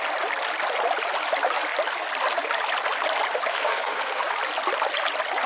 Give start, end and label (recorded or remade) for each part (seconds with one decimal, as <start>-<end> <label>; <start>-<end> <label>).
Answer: 0.0-3.5 recorded; 3.5-4.2 remade; 4.2-5.5 recorded